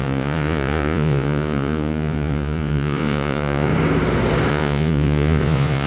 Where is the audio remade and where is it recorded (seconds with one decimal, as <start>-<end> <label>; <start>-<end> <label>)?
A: 0.0-3.7 remade; 3.7-4.5 recorded; 4.5-5.9 remade